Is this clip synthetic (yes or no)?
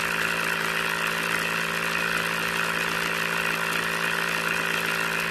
no